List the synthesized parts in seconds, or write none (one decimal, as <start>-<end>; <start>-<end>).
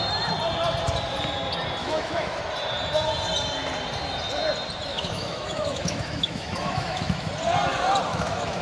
1.8-2.4; 4.9-7.3; 8.1-8.6